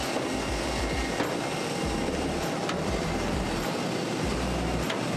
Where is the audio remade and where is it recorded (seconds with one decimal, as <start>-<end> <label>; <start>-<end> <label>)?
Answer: 0.0-1.0 recorded; 1.0-2.2 remade; 2.2-5.2 recorded